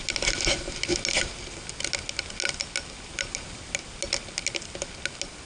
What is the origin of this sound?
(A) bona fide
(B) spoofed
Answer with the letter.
A